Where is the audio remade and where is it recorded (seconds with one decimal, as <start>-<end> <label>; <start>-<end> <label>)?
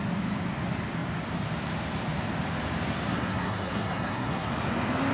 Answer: 0.0-3.1 recorded; 3.1-4.5 remade; 4.5-5.1 recorded